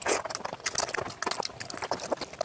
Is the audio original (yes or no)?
yes